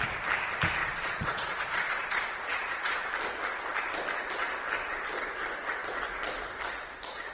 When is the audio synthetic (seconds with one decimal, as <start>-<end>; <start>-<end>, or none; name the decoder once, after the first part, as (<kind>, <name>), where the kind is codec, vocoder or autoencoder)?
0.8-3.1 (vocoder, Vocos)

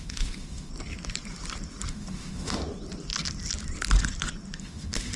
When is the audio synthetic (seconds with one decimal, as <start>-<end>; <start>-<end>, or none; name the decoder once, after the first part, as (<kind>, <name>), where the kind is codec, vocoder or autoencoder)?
0.0-0.7 (autoencoder, DAC-VAE); 1.9-2.6; 4.6-5.2

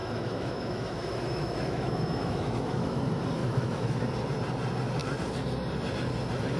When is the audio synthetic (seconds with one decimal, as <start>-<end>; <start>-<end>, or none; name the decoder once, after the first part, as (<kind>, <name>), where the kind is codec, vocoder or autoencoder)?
0.0-3.0 (autoencoder, DAC-VAE); 3.4-4.0

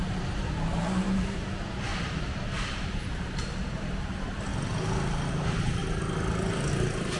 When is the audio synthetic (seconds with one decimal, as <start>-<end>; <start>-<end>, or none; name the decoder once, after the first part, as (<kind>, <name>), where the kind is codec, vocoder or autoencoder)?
0.0-1.9 (vocoder, BigVGAN v2); 2.7-4.5; 5.3-5.8; 6.7-7.2

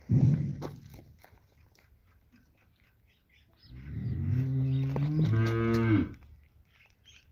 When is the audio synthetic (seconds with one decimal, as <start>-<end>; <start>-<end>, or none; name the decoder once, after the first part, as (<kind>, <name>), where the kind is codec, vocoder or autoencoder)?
0.0-0.5 (vocoder, BigVGAN v2); 1.2-2.0; 6.3-7.3

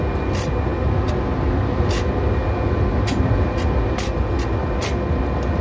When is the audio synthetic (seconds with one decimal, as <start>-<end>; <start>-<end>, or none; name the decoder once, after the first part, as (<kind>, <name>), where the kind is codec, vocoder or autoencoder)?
none

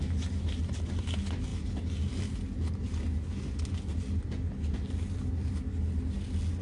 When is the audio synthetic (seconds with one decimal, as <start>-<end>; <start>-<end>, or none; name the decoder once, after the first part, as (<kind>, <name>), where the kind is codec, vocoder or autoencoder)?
none